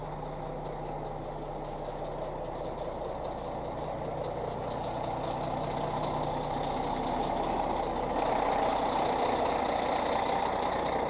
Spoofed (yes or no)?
no